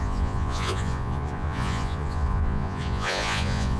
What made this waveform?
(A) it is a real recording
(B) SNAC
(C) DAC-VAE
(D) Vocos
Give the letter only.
D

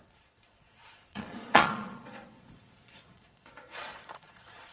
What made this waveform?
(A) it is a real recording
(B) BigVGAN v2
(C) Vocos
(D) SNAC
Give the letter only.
C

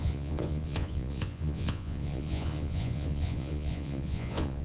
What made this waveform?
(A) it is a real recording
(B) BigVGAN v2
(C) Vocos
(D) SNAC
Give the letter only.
C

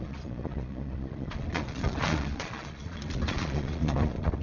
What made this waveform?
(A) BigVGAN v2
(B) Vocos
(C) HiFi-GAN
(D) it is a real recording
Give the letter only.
B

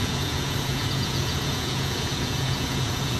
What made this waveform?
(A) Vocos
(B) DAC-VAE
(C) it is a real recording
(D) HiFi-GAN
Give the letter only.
A